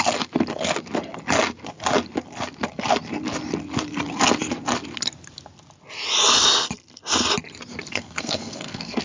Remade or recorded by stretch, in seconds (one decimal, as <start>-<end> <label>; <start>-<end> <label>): 0.0-7.9 recorded; 7.9-9.0 remade